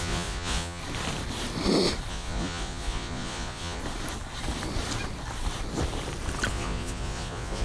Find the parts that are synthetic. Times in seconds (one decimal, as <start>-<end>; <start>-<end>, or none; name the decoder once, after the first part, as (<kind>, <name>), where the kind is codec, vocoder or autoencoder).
0.0-0.8 (vocoder, Vocos); 2.1-3.8; 6.5-7.6

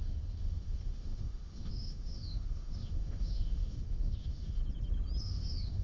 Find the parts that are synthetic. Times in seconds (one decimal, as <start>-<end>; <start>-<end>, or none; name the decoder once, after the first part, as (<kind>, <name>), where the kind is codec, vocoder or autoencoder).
0.0-4.6 (autoencoder, DAC-VAE); 5.2-5.8

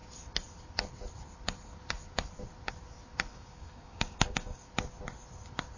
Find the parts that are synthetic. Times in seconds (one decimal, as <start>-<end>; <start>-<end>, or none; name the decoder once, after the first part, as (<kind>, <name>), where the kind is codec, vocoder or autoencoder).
3.3-4.7 (codec, DAC)

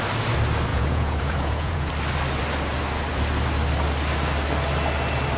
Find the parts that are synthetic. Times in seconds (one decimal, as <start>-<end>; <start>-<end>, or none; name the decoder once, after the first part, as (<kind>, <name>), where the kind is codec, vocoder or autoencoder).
0.7-1.9 (vocoder, Vocos)

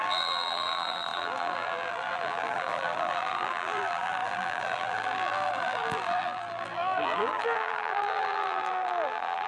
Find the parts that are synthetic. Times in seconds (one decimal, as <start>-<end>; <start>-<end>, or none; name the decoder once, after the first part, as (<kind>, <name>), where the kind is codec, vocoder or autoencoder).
0.0-9.5 (vocoder, BigVGAN v2)

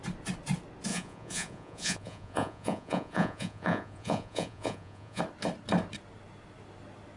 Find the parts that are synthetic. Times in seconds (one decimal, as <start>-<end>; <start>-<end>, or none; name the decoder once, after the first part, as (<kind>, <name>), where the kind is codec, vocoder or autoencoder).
0.9-5.2 (vocoder, Vocos)